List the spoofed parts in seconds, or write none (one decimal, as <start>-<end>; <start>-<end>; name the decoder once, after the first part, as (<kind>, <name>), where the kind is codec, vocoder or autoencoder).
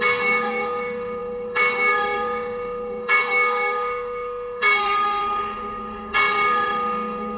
0.0-7.4 (autoencoder, DAC-VAE)